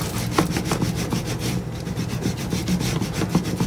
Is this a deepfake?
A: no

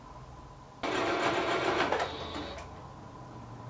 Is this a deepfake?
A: no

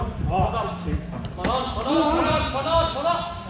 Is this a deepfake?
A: no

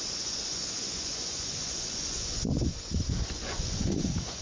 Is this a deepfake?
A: yes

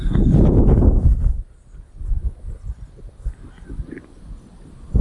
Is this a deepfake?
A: no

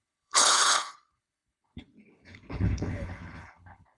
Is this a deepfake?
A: yes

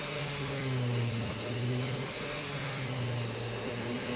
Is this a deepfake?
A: yes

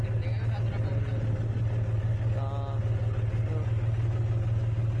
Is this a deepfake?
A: no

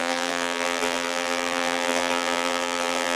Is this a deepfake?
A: yes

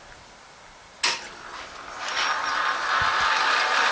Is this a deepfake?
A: no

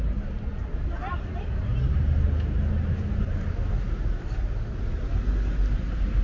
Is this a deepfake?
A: no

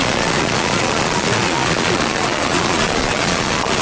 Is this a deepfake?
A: yes